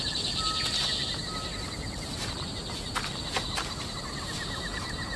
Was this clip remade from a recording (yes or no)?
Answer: no